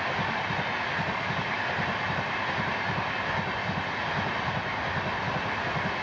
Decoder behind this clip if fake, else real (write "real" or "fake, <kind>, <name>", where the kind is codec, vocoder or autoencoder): real